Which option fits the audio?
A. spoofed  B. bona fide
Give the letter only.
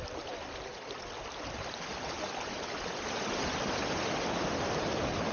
B